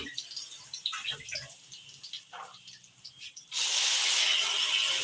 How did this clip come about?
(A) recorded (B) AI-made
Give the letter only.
A